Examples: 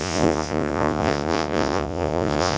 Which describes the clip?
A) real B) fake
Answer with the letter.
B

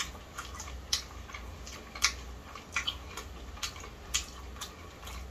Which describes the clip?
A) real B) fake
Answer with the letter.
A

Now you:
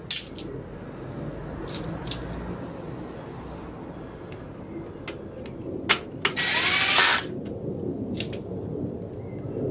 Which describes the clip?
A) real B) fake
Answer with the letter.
A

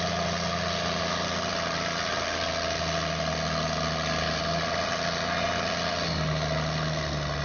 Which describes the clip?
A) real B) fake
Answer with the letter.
A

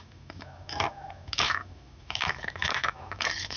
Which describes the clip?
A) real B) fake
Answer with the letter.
B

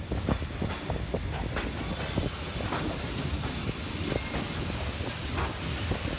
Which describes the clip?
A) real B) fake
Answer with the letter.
A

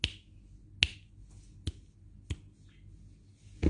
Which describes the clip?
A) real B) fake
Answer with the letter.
A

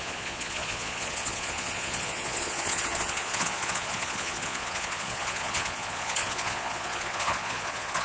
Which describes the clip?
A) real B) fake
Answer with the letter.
B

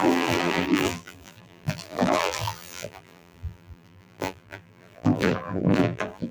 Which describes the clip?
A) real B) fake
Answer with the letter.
B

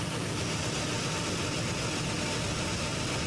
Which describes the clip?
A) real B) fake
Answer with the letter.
A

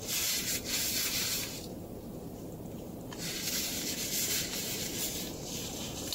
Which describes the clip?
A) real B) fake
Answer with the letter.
B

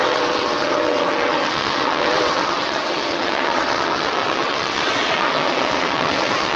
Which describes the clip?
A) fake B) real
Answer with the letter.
A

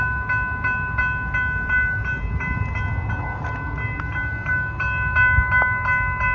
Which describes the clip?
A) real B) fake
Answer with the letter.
A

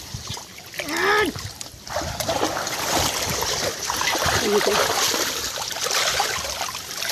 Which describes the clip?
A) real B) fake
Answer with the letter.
A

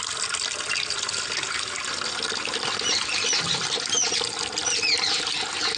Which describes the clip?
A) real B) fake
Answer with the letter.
A